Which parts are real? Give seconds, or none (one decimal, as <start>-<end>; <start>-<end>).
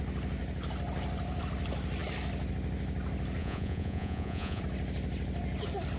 0.0-3.4; 4.6-6.0